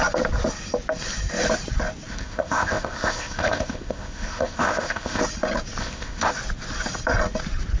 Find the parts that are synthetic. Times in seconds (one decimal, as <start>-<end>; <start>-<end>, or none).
2.1-5.2; 5.8-6.3